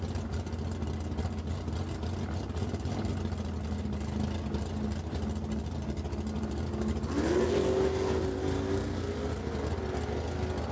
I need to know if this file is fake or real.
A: real